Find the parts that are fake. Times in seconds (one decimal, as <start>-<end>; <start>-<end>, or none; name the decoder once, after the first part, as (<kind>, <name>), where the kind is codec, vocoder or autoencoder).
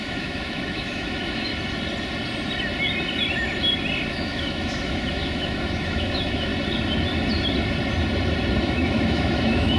0.0-1.5 (autoencoder, DAC-VAE); 4.1-6.5; 8.6-9.8